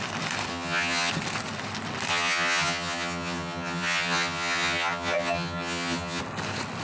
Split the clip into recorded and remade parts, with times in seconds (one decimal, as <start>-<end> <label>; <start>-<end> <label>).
0.0-0.5 recorded; 0.5-1.1 remade; 1.1-2.1 recorded; 2.1-6.2 remade; 6.2-6.8 recorded